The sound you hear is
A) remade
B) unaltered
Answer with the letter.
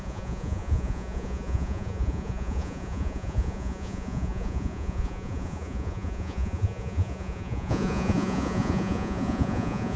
A